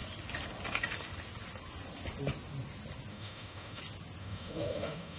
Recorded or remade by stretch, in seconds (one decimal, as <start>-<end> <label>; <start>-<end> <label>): 0.0-3.1 recorded; 3.1-3.8 remade; 3.8-4.2 recorded; 4.2-5.2 remade